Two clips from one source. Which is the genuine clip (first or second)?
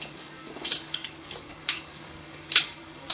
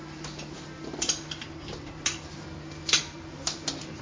second